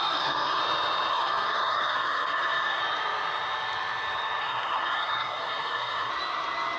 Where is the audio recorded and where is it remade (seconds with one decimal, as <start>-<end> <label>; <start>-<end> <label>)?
0.0-0.6 remade; 0.6-1.1 recorded; 1.1-2.8 remade; 2.8-4.4 recorded; 4.4-6.1 remade; 6.1-6.8 recorded